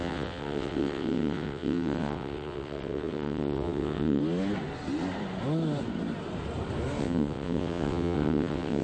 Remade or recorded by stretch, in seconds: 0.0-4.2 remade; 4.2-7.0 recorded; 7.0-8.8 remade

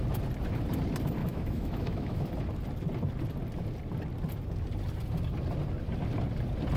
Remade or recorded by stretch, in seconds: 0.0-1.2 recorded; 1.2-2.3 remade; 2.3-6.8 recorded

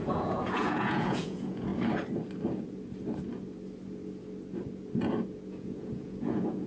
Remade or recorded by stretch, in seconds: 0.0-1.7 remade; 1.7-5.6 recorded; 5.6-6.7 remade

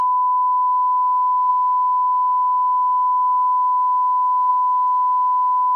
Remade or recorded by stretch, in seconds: 0.0-1.5 recorded; 1.5-4.5 remade; 4.5-5.8 recorded

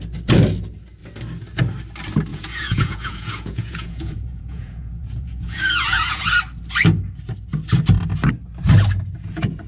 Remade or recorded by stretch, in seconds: 0.0-2.3 recorded; 2.3-6.2 remade; 6.2-9.7 recorded